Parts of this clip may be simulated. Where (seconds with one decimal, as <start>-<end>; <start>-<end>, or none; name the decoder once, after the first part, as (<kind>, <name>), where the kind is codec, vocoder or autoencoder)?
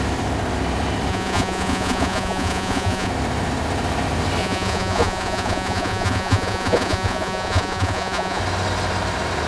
1.1-3.1 (vocoder, Vocos); 4.4-8.4